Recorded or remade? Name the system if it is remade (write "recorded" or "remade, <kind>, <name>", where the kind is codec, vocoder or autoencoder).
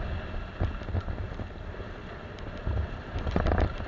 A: recorded